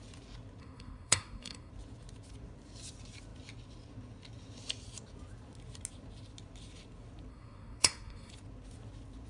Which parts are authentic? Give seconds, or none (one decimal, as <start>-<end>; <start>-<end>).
0.0-0.6; 1.7-7.3; 8.3-9.3